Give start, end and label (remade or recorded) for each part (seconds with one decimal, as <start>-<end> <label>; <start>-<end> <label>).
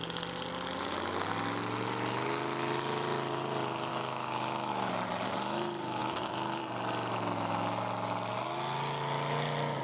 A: 0.0-3.9 recorded; 3.9-4.9 remade; 4.9-6.0 recorded; 6.0-6.6 remade; 6.6-9.8 recorded